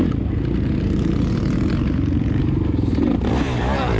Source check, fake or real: real